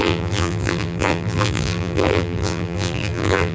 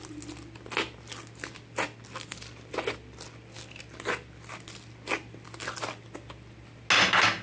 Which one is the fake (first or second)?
first